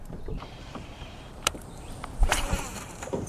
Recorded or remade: remade